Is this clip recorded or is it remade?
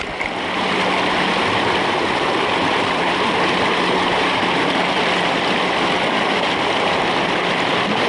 recorded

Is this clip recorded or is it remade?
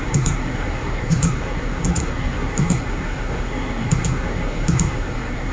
remade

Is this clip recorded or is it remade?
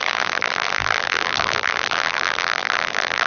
remade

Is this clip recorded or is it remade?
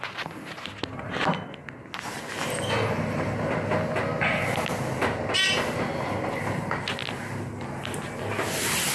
recorded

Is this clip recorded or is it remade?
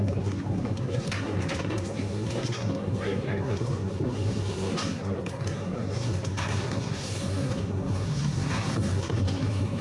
remade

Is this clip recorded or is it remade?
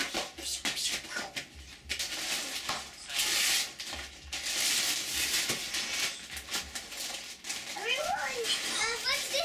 recorded